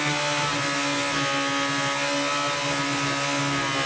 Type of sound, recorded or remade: recorded